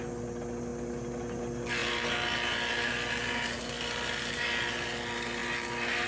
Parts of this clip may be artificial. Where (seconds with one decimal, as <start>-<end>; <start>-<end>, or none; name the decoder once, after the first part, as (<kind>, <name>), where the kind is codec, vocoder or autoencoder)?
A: none